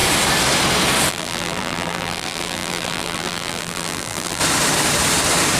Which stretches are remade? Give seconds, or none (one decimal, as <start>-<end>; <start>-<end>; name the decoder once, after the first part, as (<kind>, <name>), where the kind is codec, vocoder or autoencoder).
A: 1.1-4.4 (vocoder, BigVGAN v2)